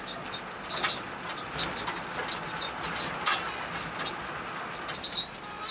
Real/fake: real